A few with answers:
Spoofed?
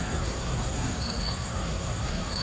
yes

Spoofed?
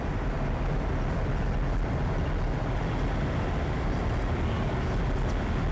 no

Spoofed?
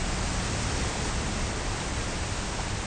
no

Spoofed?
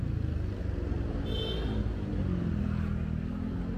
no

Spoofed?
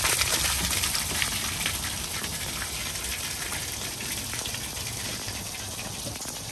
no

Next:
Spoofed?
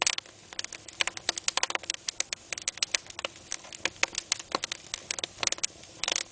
no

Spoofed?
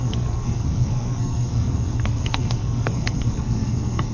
yes